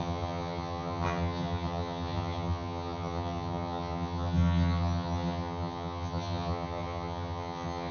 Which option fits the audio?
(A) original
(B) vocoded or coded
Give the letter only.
B